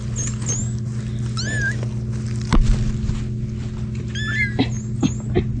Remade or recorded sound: recorded